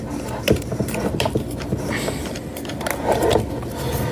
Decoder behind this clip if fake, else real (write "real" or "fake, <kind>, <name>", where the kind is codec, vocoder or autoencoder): real